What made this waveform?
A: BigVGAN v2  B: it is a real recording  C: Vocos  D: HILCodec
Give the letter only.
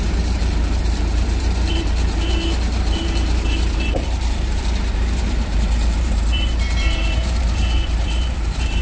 A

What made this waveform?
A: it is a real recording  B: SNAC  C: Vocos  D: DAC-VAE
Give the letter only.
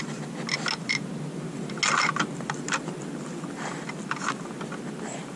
A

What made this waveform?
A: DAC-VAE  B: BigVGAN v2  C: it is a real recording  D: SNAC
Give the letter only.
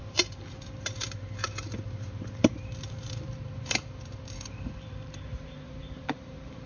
B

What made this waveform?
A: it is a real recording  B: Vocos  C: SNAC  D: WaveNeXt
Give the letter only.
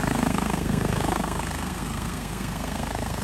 C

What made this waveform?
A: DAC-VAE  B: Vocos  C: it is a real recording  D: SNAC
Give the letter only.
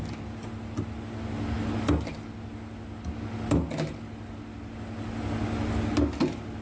C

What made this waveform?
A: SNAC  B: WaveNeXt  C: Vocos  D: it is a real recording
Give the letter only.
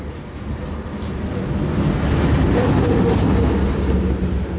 D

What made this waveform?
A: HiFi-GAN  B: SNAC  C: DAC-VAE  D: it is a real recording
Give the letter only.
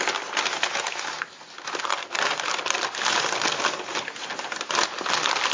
D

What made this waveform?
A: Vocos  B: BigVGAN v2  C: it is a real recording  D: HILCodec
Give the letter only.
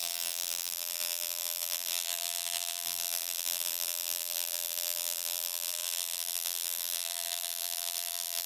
B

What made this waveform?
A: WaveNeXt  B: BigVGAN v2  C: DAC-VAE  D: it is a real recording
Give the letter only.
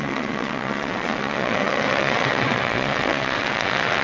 A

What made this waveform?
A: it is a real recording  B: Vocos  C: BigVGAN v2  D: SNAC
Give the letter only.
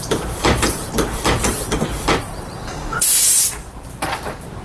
C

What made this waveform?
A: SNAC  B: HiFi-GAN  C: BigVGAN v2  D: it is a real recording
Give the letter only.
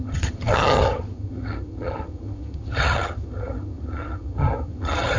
B